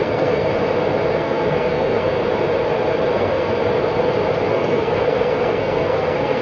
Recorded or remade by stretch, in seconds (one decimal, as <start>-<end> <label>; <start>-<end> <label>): 0.0-0.5 remade; 0.5-1.1 recorded; 1.1-2.2 remade; 2.2-3.1 recorded; 3.1-3.6 remade; 3.6-4.5 recorded; 4.5-6.4 remade